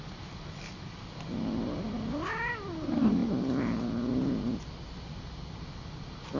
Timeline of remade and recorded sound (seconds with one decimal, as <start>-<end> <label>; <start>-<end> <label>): 0.0-6.4 recorded